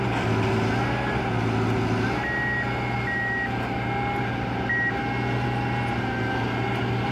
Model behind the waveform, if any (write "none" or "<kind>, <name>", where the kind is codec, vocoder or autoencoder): none